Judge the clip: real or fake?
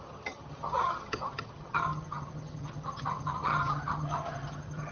fake